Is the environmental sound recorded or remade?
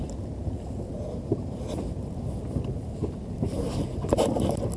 recorded